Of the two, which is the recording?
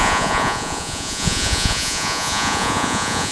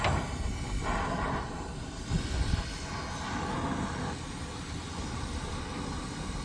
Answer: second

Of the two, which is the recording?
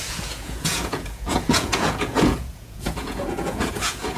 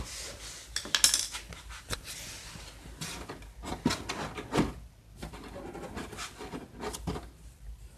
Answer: second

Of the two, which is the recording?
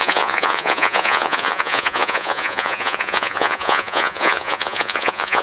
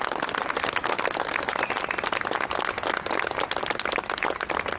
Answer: second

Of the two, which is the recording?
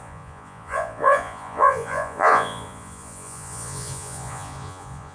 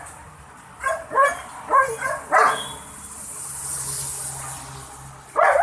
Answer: second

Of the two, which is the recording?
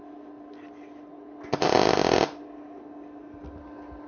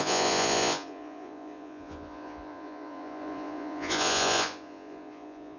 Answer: first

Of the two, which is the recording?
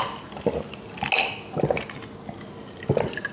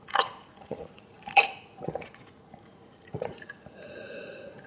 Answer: first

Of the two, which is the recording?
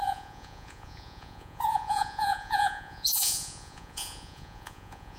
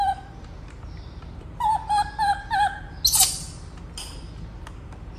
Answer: second